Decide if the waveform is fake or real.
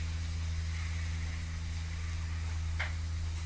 real